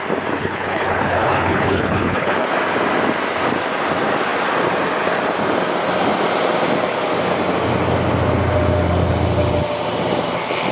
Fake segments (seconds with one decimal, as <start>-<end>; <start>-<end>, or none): 0.4-2.5